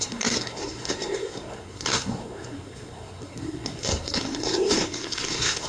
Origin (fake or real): fake